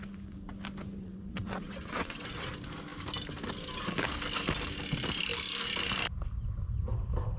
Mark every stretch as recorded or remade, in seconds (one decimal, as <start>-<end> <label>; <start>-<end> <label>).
0.0-1.0 recorded; 1.0-2.5 remade; 2.5-7.4 recorded